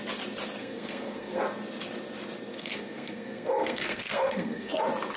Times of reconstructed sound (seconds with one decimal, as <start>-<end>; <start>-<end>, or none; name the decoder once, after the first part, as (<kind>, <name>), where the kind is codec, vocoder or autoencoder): 0.6-1.4 (codec, SNAC); 2.5-4.7